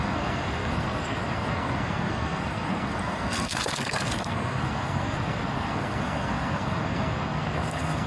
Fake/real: fake